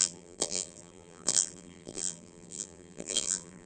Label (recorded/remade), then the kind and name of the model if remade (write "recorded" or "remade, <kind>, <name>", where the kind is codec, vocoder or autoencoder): remade, vocoder, BigVGAN v2